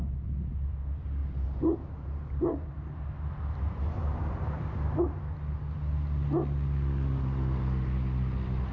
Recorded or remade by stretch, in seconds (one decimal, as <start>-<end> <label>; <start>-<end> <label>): 0.0-1.2 recorded; 1.2-4.7 remade; 4.7-8.7 recorded